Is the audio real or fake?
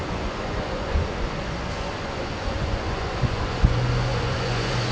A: fake